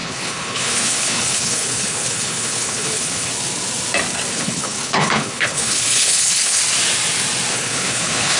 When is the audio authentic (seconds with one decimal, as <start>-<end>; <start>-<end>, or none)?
3.3-4.3; 6.6-7.5